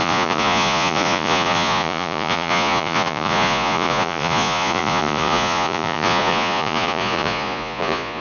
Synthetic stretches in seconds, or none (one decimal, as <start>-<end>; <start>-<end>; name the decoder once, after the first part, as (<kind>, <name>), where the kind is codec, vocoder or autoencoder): 0.0-8.2 (vocoder, Vocos)